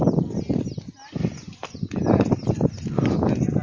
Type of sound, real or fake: real